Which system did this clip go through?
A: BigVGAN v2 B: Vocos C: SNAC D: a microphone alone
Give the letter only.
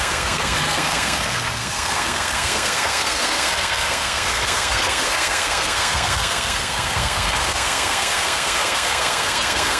C